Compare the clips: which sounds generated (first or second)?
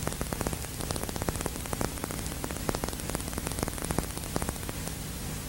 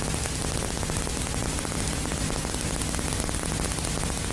first